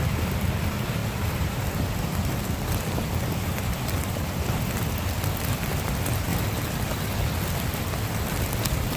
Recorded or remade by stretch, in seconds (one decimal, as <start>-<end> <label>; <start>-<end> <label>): 0.0-1.0 recorded; 1.0-1.7 remade; 1.7-9.0 recorded